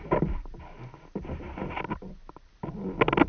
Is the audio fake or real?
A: real